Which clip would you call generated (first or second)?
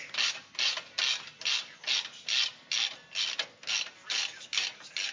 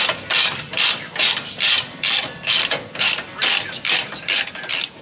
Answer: second